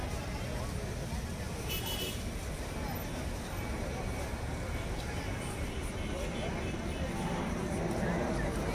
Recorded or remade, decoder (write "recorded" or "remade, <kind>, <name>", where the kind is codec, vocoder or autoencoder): recorded